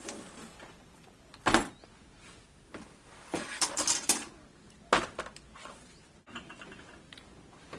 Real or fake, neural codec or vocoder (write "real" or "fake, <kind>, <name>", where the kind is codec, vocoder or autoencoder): real